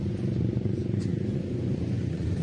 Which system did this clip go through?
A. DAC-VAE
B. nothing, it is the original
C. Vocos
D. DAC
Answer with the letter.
C